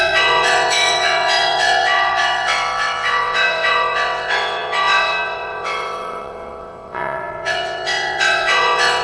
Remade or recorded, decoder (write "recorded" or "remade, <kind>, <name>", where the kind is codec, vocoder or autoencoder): remade, vocoder, WaveNeXt